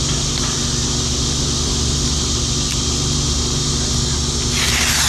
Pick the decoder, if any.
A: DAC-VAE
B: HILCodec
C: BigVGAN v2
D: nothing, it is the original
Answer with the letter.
D